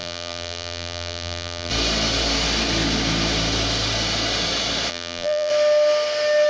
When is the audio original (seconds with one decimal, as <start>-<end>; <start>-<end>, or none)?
1.7-4.9; 5.5-6.5